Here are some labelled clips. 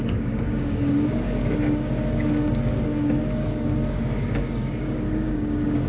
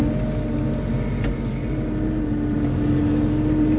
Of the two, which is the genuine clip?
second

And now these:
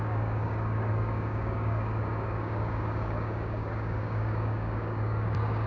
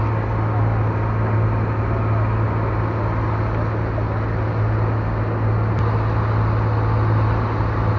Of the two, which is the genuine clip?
second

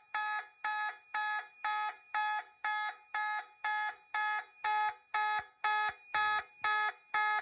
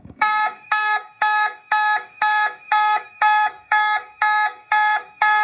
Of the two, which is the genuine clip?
first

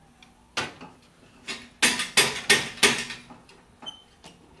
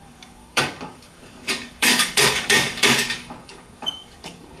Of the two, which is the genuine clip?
first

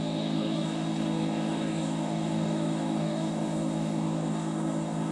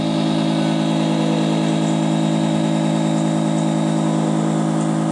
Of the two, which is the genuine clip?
second